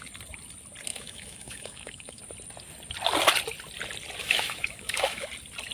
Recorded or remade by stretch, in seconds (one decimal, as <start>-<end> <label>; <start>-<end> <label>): 0.0-0.9 recorded; 0.9-2.2 remade; 2.2-4.2 recorded; 4.2-5.3 remade; 5.3-5.7 recorded